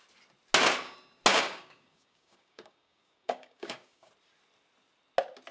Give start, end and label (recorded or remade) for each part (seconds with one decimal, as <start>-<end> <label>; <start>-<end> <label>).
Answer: 0.0-1.3 recorded; 1.3-4.1 remade; 4.1-5.5 recorded